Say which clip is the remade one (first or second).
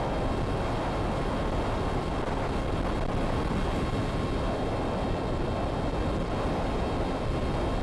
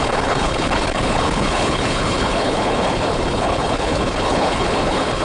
second